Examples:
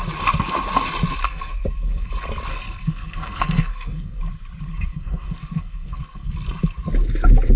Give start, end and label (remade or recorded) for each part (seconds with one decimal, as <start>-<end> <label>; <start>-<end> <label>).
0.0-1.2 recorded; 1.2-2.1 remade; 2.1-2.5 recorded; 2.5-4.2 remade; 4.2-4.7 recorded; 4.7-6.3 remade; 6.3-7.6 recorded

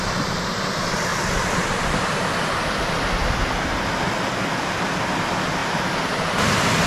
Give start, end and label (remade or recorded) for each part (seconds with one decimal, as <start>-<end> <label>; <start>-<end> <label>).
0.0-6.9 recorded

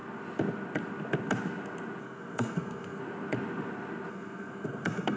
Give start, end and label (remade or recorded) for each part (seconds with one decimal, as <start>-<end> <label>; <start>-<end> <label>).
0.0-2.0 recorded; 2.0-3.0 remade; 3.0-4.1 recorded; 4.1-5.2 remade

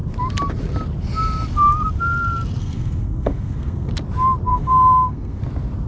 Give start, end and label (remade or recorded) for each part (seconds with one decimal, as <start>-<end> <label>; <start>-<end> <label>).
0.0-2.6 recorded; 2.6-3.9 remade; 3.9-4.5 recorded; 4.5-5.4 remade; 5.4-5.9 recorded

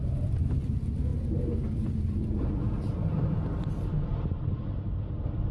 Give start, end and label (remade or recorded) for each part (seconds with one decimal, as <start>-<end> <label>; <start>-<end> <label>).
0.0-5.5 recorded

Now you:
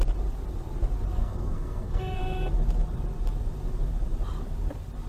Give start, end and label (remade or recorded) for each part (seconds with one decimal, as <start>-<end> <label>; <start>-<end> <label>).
0.0-1.2 recorded; 1.2-2.2 remade; 2.2-5.1 recorded

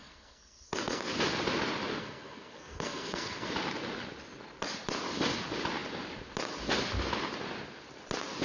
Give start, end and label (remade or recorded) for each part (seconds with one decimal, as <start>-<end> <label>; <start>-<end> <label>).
0.0-1.0 remade; 1.0-2.0 recorded; 2.0-3.5 remade; 3.5-8.4 recorded

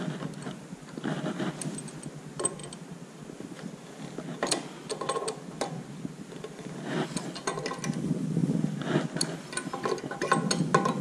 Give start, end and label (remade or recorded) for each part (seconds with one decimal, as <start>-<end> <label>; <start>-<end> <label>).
0.0-11.0 recorded